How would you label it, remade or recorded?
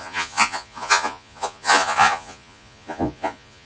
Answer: remade